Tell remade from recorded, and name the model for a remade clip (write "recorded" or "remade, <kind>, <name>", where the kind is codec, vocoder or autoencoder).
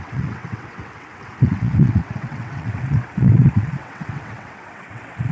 remade, vocoder, WaveNeXt